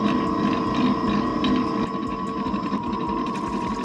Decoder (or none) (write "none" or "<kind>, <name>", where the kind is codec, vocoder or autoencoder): none